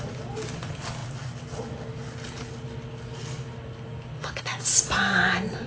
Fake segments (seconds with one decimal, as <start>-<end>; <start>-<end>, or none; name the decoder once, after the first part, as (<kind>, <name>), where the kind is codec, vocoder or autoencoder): none